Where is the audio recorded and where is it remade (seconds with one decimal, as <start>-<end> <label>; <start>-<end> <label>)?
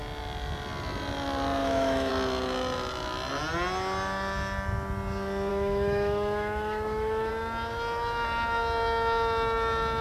0.0-1.6 recorded; 1.6-2.1 remade; 2.1-5.5 recorded; 5.5-7.3 remade; 7.3-10.0 recorded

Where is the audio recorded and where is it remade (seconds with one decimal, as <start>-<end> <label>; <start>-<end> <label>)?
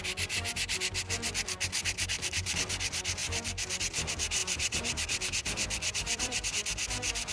0.0-1.8 recorded; 1.8-2.5 remade; 2.5-3.2 recorded; 3.2-3.8 remade; 3.8-4.4 recorded; 4.4-6.5 remade; 6.5-7.3 recorded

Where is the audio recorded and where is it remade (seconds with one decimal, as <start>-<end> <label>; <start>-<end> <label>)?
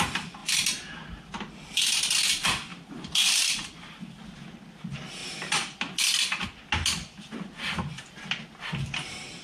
0.0-2.7 recorded; 2.7-4.1 remade; 4.1-9.4 recorded